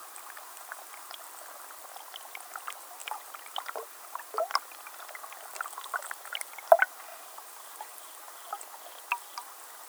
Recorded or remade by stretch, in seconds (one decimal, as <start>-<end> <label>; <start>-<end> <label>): 0.0-1.2 remade; 1.2-3.0 recorded; 3.0-4.3 remade; 4.3-7.1 recorded; 7.1-8.3 remade; 8.3-9.9 recorded